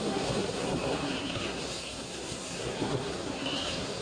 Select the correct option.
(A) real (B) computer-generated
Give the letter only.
B